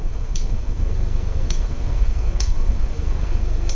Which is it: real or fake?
fake